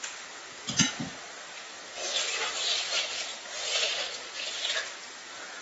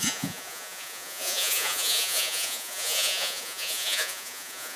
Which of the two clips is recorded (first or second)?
first